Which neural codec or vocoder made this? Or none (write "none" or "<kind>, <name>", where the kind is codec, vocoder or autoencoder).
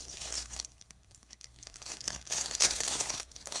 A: codec, SNAC